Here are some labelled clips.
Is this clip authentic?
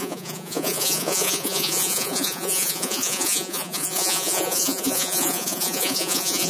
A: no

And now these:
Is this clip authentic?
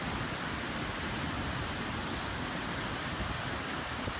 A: yes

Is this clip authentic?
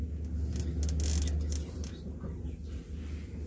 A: yes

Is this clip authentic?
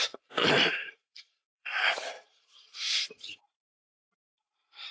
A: no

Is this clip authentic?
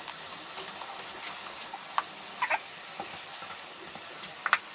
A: yes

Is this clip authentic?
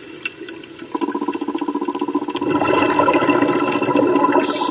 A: yes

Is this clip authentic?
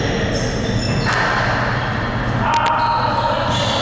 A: yes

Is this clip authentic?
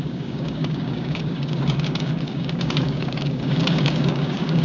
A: no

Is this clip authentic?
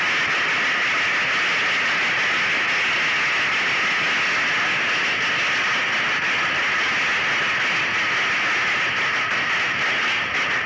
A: yes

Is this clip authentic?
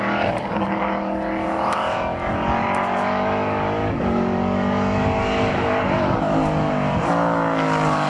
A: no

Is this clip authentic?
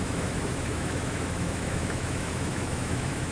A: no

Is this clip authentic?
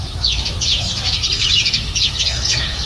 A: no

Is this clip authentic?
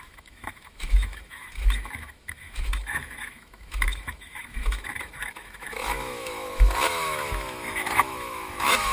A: no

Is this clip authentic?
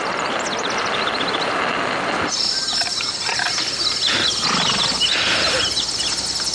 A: yes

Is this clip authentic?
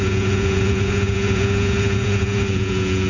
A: no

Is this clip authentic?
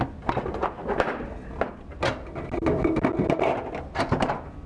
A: yes